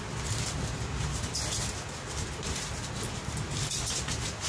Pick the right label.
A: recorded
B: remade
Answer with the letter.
A